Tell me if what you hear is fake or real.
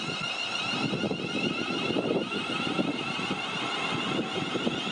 real